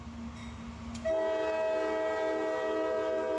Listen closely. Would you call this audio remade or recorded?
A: recorded